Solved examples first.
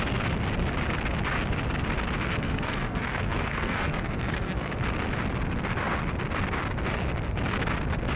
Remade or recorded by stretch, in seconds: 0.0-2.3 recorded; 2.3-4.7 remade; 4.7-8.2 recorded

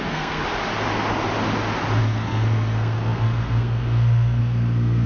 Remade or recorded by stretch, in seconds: 0.0-0.4 remade; 0.4-2.0 recorded; 2.0-5.1 remade

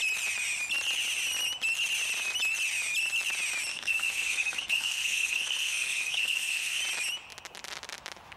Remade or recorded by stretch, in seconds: 0.0-3.7 recorded; 3.7-6.8 remade; 6.8-8.4 recorded

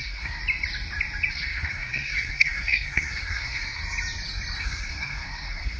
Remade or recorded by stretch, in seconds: 0.0-0.4 remade; 0.4-1.3 recorded; 1.3-3.8 remade; 3.8-4.6 recorded; 4.6-5.8 remade